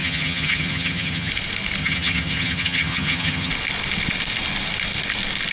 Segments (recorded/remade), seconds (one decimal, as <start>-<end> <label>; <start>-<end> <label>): 0.0-1.3 remade; 1.3-1.8 recorded; 1.8-3.5 remade; 3.5-5.5 recorded